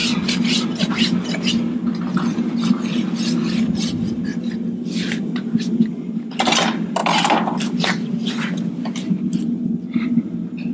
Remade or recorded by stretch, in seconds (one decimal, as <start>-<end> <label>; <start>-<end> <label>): 0.0-10.7 recorded